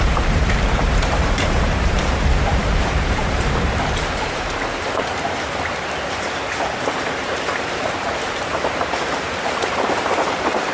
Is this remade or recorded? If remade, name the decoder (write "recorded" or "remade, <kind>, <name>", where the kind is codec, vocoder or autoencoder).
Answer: remade, vocoder, BigVGAN v2